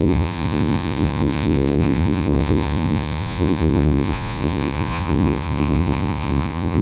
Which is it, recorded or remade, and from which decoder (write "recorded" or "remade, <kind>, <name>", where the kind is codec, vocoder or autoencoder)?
remade, vocoder, Vocos